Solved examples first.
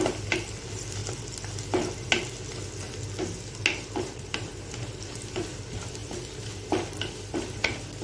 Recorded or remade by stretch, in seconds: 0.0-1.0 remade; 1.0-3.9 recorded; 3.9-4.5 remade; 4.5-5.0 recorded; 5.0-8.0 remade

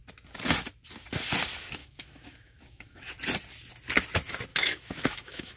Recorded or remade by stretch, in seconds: 0.0-1.8 recorded; 1.8-3.1 remade; 3.1-4.5 recorded; 4.5-5.6 remade

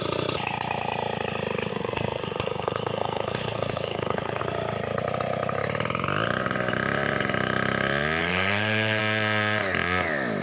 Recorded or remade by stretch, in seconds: 0.0-1.7 recorded; 1.7-4.4 remade; 4.4-8.2 recorded; 8.2-9.0 remade; 9.0-10.4 recorded

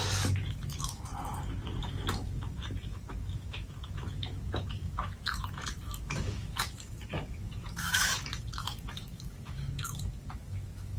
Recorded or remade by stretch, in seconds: 0.0-1.1 remade; 1.1-1.8 recorded; 1.8-11.0 remade

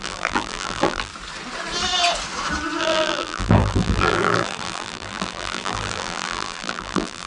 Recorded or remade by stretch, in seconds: 0.0-1.1 remade; 1.1-2.8 recorded; 2.8-7.3 remade

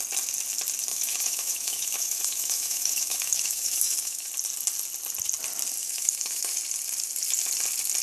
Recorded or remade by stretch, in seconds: 0.0-0.9 recorded; 0.9-4.3 remade; 4.3-5.8 recorded; 5.8-6.6 remade; 6.6-8.0 recorded